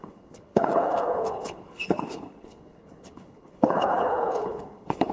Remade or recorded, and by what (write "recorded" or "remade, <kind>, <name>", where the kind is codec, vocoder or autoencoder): remade, codec, HILCodec